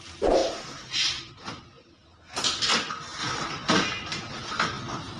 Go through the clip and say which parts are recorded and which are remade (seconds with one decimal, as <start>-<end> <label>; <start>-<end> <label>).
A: 0.0-5.2 recorded